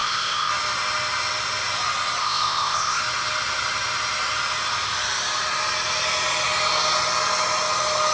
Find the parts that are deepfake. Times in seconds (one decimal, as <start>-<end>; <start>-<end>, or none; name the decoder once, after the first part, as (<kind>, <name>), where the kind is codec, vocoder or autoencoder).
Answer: 0.0-0.5 (codec, ZipCodec); 2.2-3.0